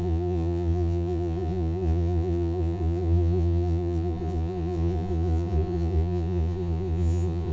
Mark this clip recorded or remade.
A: remade